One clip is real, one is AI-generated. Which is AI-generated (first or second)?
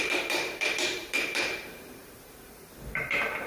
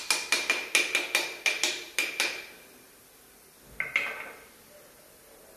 first